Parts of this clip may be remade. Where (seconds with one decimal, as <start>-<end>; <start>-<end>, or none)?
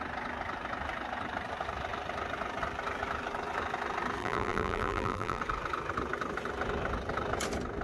4.2-5.4